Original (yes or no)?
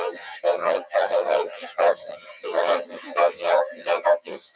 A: no